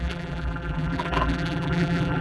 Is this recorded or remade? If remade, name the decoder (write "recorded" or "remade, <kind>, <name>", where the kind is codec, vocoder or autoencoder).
remade, vocoder, BigVGAN v2